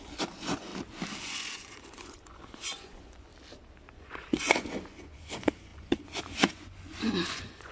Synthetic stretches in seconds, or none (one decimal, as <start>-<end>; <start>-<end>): 0.0-0.7; 1.2-3.3; 3.9-7.7